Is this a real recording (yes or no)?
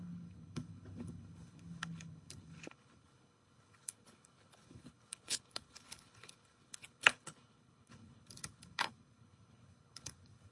no